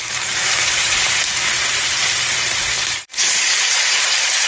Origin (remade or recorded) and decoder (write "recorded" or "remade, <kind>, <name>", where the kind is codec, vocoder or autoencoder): remade, vocoder, BigVGAN v2